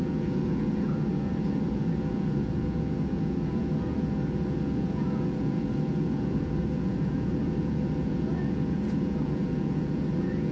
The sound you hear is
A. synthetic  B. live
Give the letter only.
A